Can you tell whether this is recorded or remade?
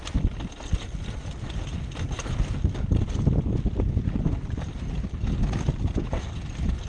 recorded